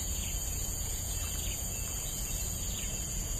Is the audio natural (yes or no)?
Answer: no